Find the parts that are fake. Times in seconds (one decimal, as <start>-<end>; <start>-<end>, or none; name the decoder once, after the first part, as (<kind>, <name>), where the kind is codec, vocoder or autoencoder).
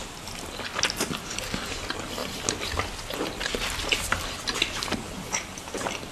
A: 0.7-1.2 (vocoder, BigVGAN v2); 2.2-6.1